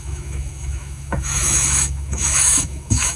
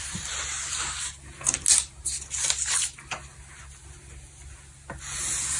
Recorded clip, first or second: second